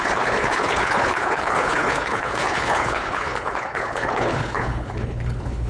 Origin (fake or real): fake